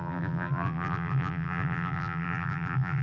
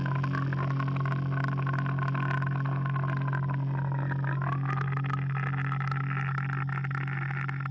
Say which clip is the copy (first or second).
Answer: first